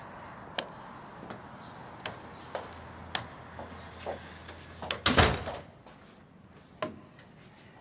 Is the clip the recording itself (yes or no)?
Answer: yes